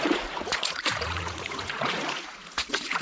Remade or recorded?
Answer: remade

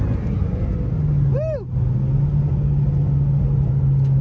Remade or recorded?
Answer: recorded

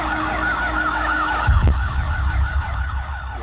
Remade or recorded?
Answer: remade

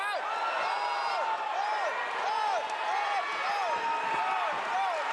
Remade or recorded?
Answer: recorded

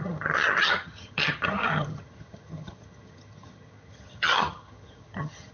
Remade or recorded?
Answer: remade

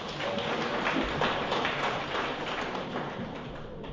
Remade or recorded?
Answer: recorded